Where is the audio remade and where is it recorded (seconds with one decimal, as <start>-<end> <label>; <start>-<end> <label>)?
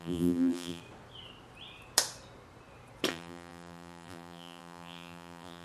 0.0-0.8 remade; 0.8-3.1 recorded; 3.1-5.6 remade